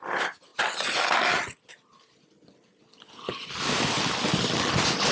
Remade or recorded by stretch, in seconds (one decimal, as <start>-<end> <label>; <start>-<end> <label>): 0.0-5.1 recorded